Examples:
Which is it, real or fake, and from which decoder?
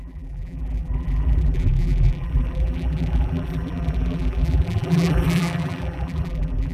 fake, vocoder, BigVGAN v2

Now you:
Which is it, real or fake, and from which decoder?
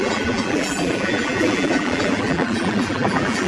fake, vocoder, BigVGAN v2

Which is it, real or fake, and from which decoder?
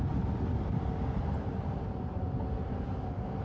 real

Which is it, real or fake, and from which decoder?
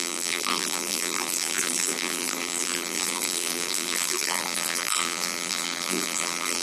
fake, vocoder, BigVGAN v2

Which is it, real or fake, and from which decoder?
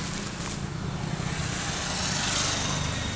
real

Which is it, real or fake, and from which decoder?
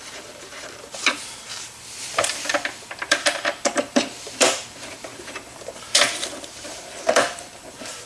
fake, vocoder, BigVGAN v2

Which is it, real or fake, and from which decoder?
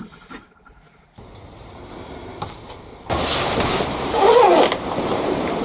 fake, vocoder, BigVGAN v2